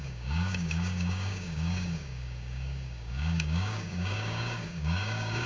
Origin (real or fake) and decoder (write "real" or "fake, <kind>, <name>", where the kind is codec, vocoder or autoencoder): fake, codec, DAC